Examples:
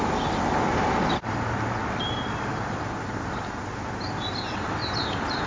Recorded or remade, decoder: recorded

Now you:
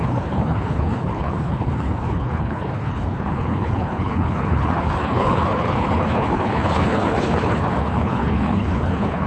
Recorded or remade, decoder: remade, codec, HILCodec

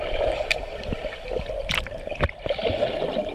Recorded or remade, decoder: remade, vocoder, BigVGAN v2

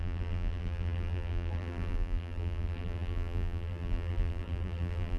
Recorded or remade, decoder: remade, vocoder, BigVGAN v2